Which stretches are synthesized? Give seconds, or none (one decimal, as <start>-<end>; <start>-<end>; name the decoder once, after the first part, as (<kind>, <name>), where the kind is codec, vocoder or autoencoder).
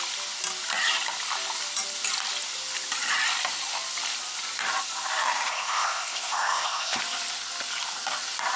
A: 5.5-7.0 (codec, ZipCodec)